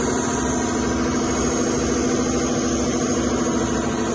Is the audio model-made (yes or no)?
no